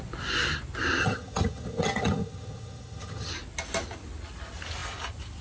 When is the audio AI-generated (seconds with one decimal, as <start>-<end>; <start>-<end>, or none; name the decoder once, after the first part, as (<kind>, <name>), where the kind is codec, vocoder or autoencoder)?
1.0-3.3 (vocoder, HiFi-GAN)